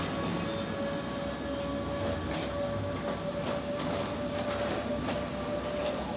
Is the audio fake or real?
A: real